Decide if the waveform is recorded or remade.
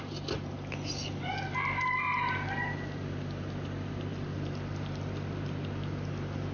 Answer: recorded